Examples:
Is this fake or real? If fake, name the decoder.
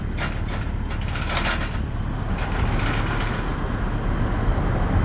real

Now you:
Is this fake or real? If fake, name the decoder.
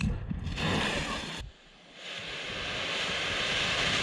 real